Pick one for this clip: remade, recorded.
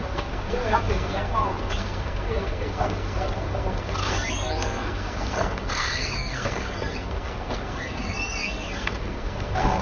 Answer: remade